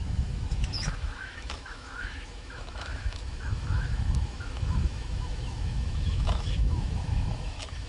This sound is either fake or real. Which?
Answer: fake